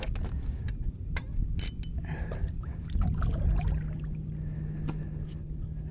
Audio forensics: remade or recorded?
recorded